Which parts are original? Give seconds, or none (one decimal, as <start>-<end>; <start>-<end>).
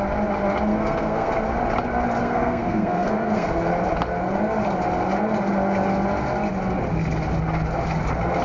0.0-0.7; 1.3-2.2; 3.5-8.4